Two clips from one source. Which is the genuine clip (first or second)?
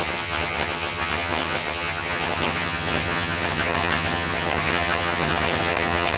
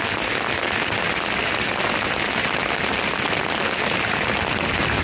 second